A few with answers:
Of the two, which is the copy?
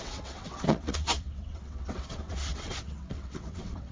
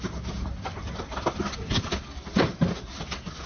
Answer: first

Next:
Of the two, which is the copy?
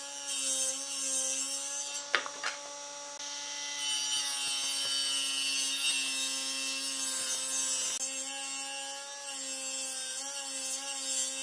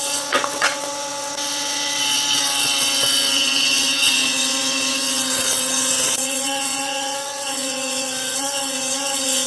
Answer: second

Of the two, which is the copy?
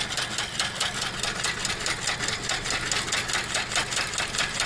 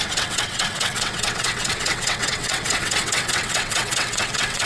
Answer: second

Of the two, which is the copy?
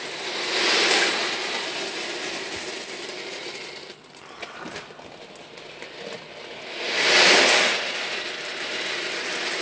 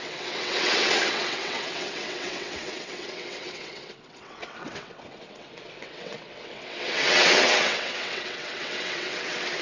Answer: second